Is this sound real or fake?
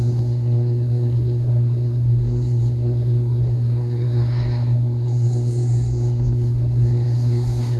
fake